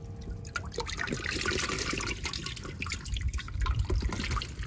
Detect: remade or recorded recorded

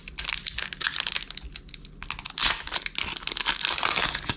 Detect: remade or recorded recorded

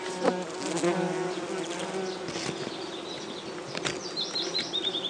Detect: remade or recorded recorded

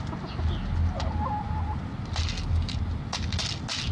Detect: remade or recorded recorded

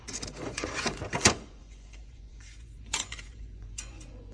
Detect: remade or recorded remade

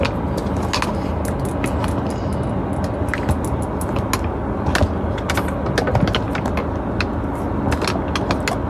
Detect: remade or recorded recorded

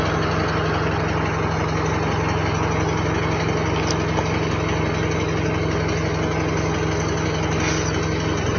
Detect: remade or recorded recorded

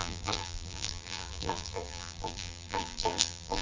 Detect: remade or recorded remade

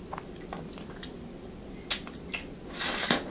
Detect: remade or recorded recorded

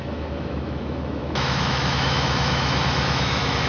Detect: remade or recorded remade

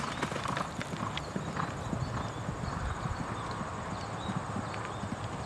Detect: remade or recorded recorded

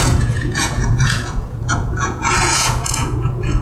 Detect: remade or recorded remade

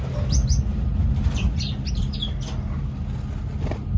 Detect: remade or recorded recorded